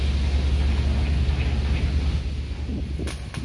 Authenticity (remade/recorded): recorded